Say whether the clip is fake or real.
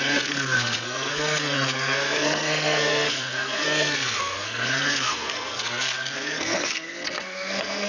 fake